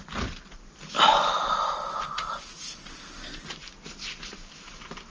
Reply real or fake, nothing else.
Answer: real